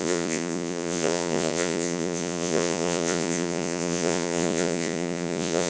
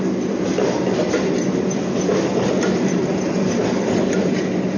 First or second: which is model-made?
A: first